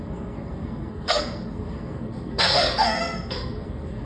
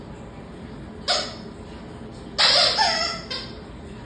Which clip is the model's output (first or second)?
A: first